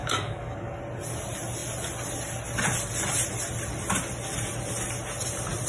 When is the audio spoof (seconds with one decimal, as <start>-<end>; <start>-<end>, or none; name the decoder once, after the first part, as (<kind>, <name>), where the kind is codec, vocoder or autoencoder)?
0.0-0.8 (codec, DAC)